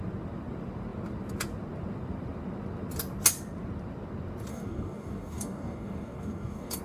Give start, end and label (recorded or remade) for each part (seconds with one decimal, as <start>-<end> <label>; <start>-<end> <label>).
0.0-4.5 recorded; 4.5-6.8 remade